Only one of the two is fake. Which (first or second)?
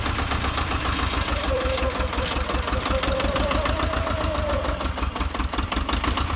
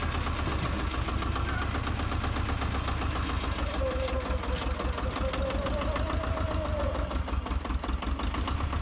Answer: first